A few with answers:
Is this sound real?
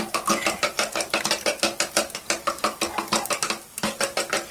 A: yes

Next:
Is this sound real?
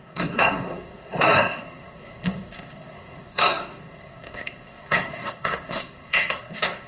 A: no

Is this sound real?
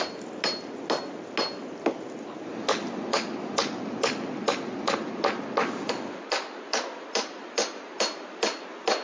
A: yes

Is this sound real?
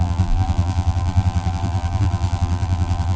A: no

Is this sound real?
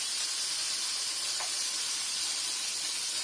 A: yes